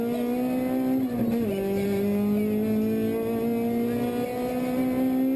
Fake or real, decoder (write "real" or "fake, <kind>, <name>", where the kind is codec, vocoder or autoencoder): real